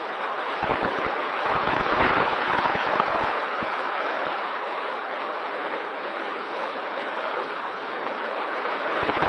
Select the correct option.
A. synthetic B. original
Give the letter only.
A